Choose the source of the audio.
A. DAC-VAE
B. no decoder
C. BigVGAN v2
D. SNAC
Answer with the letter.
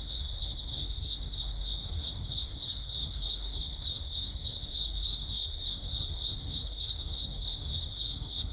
D